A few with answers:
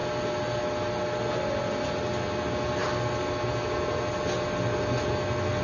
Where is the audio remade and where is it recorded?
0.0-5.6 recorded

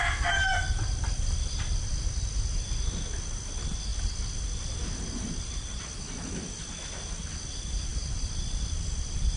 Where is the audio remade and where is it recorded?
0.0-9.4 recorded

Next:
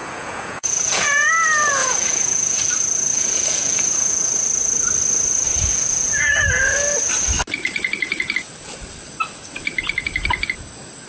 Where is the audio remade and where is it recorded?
0.0-1.3 remade; 1.3-1.8 recorded; 1.8-2.7 remade; 2.7-3.1 recorded; 3.1-4.3 remade; 4.3-5.7 recorded; 5.7-6.6 remade; 6.6-11.1 recorded